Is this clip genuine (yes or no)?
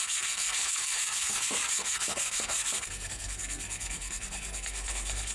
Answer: no